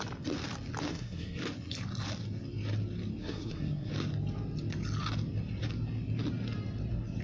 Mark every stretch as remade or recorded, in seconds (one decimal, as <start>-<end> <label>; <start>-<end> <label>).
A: 0.0-0.9 recorded; 0.9-1.4 remade; 1.4-3.2 recorded; 3.2-3.9 remade; 3.9-7.2 recorded